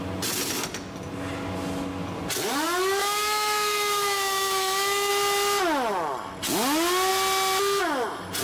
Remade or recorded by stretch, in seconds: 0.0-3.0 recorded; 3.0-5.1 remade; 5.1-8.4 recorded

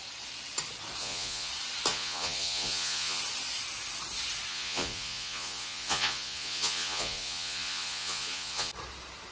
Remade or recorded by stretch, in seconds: 0.0-1.0 recorded; 1.0-1.5 remade; 1.5-1.9 recorded; 1.9-3.2 remade; 3.2-4.5 recorded; 4.5-8.7 remade; 8.7-9.3 recorded

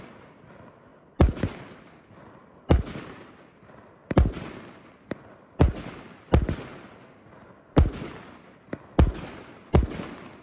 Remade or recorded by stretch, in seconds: 0.0-10.4 recorded

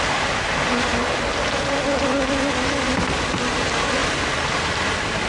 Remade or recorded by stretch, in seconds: 0.0-5.3 recorded